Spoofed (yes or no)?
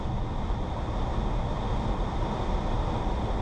no